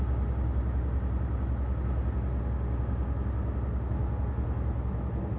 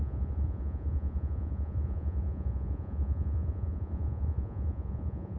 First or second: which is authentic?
first